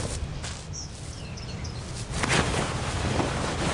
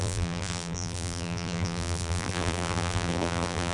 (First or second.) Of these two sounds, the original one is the first